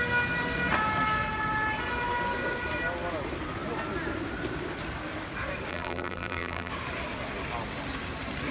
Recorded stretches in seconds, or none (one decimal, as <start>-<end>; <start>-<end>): 0.0-5.7; 6.7-8.5

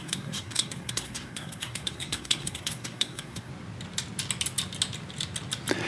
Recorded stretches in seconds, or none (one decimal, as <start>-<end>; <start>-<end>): 3.5-5.9

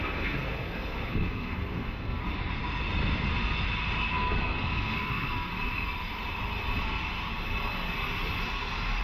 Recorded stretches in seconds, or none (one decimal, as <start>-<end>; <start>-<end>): 2.2-4.1; 5.5-9.0

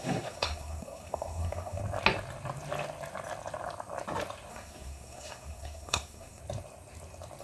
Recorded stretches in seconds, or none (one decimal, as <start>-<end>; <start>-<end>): 1.8-4.5; 6.4-7.4

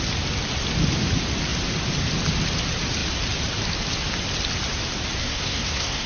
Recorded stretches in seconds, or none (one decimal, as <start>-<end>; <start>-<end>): 0.0-5.2

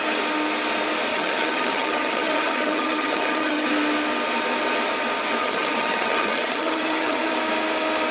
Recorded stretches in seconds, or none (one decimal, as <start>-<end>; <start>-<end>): 0.0-1.1; 3.7-5.4; 7.3-8.1

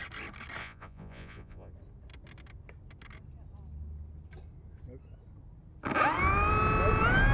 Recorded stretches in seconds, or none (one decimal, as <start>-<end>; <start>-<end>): 0.0-0.6; 1.7-7.3